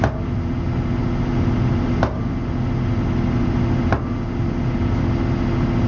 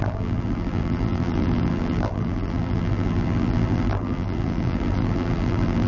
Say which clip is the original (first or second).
first